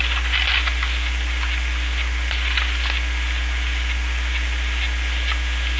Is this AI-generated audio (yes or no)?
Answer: no